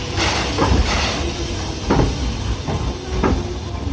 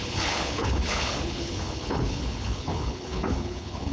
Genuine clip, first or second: first